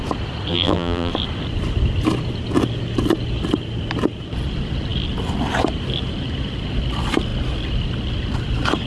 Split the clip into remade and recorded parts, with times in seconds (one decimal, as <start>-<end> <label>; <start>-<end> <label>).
0.0-0.5 recorded; 0.5-1.1 remade; 1.1-8.9 recorded